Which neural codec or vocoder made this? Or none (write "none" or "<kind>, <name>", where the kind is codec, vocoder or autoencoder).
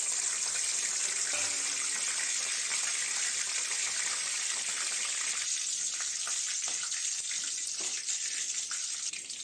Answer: none